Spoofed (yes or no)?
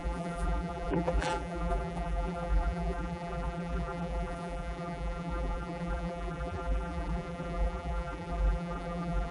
yes